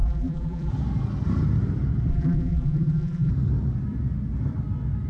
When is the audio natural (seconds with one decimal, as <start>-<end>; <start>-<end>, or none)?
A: 0.7-2.1; 3.3-5.1